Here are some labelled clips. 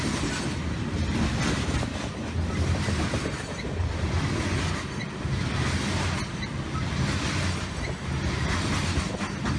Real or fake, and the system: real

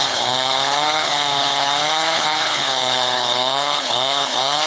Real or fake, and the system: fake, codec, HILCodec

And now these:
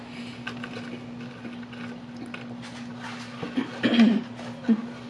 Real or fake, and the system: real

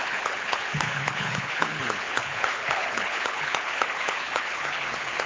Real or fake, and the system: fake, codec, HILCodec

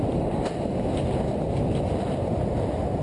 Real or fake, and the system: real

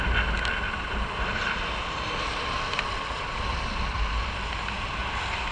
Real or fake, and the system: real